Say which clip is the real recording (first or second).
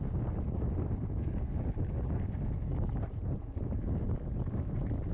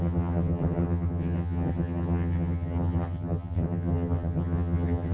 first